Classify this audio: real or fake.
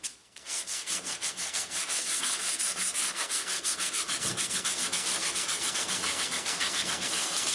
fake